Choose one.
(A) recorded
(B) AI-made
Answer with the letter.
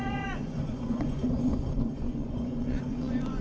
B